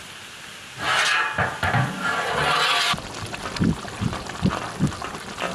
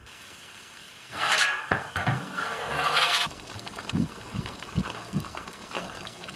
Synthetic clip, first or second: second